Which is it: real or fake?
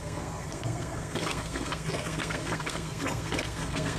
fake